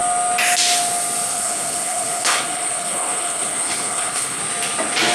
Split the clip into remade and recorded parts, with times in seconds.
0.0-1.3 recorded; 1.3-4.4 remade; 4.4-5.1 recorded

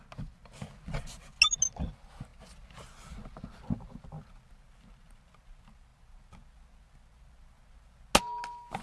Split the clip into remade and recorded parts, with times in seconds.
0.0-8.8 recorded

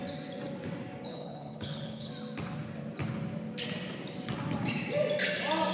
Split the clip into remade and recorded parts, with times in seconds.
0.0-1.1 recorded; 1.1-2.1 remade; 2.1-5.7 recorded

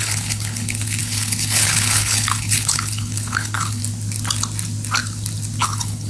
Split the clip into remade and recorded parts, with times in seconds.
0.0-3.8 remade; 3.8-5.6 recorded; 5.6-6.1 remade